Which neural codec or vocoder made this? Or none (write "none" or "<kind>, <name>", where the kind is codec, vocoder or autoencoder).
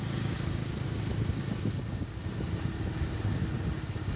none